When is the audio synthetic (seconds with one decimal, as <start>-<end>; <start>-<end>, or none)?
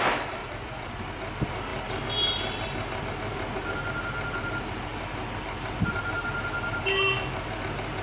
0.4-1.0